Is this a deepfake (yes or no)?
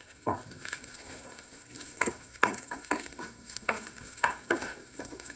yes